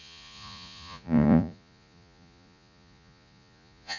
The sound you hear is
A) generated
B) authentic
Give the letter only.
A